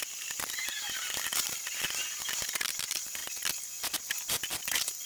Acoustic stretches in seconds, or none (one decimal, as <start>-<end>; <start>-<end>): 3.2-5.1